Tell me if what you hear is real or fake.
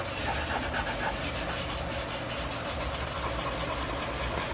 real